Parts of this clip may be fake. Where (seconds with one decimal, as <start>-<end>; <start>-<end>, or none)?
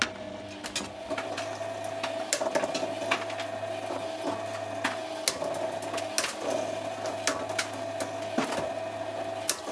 none